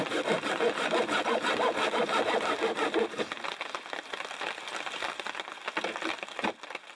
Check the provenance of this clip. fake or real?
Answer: real